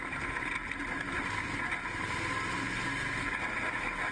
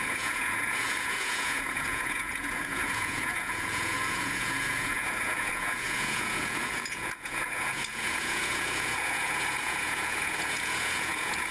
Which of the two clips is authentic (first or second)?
first